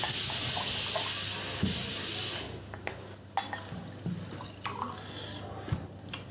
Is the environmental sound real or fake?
real